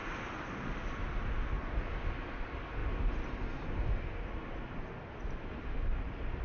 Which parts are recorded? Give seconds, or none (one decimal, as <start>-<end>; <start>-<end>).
0.0-6.4